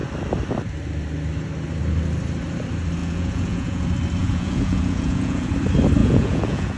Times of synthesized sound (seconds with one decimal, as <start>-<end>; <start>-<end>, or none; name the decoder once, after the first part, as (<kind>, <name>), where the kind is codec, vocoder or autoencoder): 3.0-3.8 (vocoder, Vocos); 4.2-5.5; 6.0-6.8